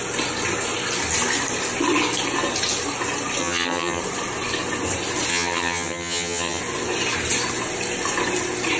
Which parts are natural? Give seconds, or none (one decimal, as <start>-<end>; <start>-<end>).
0.0-3.4; 4.0-5.3; 6.6-8.8